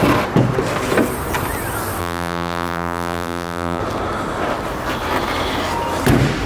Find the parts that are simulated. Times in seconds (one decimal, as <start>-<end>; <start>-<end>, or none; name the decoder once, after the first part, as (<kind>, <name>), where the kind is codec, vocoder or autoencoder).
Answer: 2.0-3.8 (vocoder, BigVGAN v2)